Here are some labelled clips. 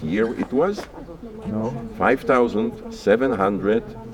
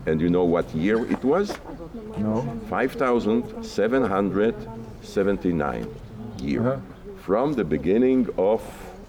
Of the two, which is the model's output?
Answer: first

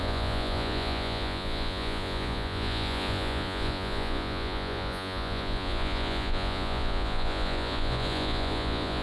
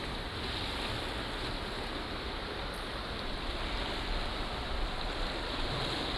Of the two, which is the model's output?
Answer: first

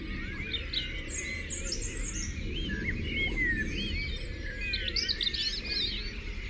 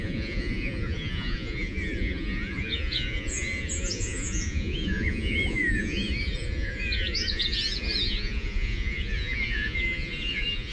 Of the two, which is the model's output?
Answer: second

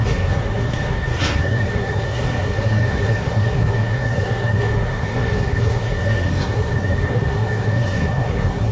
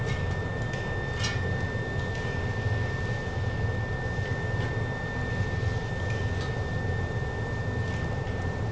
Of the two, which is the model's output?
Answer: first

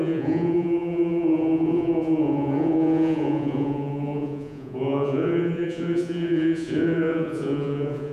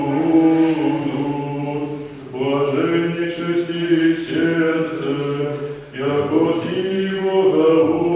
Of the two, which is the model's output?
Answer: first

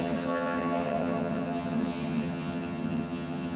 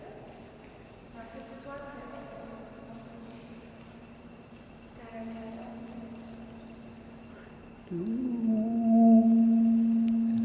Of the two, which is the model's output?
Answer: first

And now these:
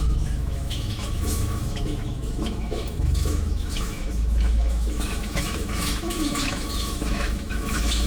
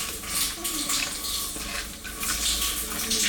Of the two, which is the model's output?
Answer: first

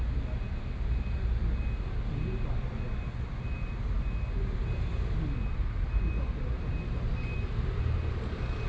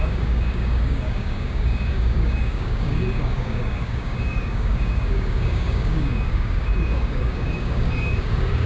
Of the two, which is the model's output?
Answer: second